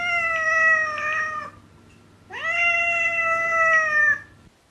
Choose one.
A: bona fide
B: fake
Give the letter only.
A